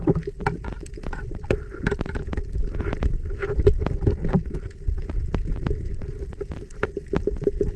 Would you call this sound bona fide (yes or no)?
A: no